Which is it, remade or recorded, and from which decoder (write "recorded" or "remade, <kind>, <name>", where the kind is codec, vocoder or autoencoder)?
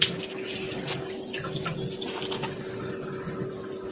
recorded